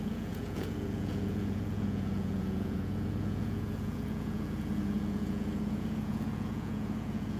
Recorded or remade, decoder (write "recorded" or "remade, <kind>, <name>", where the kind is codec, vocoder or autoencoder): remade, vocoder, Vocos